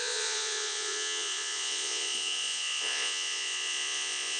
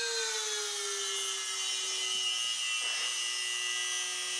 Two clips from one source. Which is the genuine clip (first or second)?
second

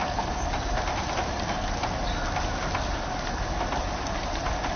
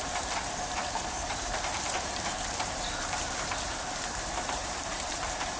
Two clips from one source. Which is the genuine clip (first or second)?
first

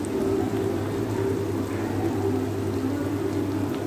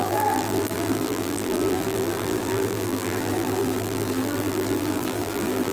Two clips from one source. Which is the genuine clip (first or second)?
first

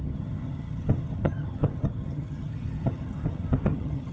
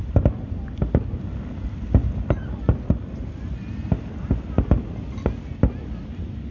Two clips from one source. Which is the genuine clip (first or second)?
second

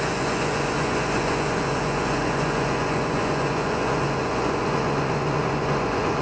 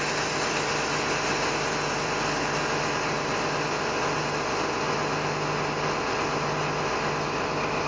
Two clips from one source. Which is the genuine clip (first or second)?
second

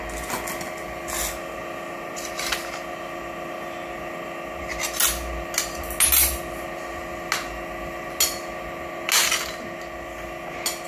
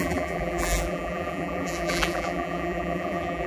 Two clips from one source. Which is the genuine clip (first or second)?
first